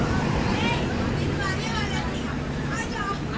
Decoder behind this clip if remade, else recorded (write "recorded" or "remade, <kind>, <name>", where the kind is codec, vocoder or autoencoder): recorded